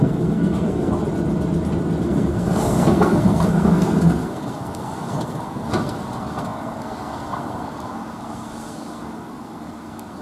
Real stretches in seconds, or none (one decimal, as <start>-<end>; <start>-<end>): 0.9-2.0